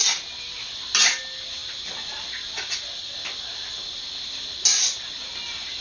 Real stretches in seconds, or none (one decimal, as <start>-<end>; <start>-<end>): 0.0-5.8